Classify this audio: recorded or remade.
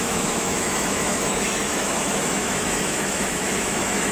remade